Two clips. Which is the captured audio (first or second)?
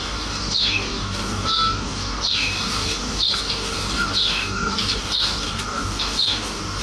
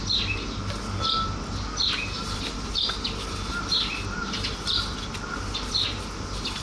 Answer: second